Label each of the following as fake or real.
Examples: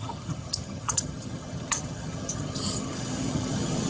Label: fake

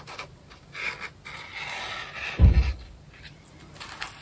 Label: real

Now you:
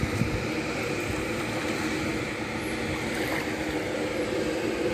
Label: real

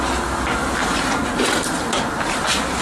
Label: real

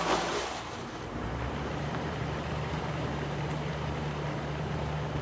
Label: fake